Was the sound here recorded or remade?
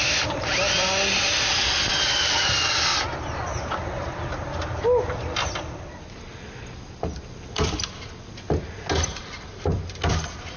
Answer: recorded